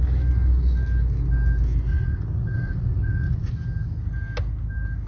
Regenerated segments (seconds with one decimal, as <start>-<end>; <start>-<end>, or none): 1.9-3.5